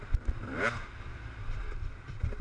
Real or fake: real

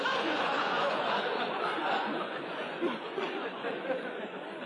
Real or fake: fake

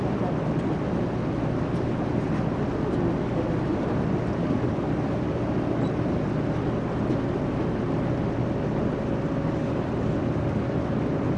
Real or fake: real